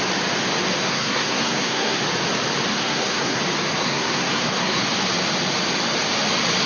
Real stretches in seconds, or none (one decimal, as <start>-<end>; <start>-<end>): 0.0-0.8; 2.0-2.7; 3.4-3.8; 4.8-6.7